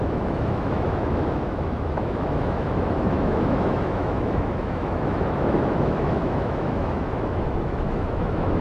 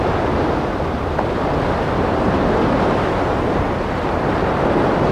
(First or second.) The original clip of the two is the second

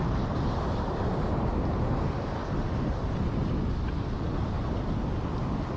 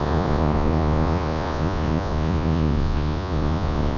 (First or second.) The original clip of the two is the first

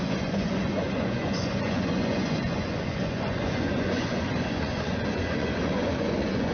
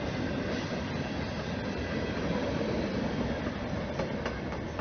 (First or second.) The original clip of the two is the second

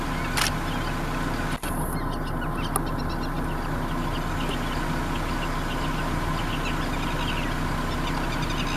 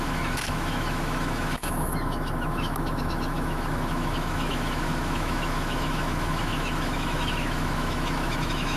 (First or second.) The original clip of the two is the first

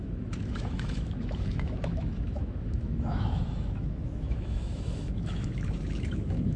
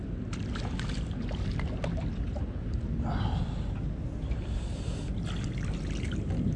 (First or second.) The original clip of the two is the second